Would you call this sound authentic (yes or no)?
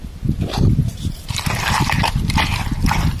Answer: yes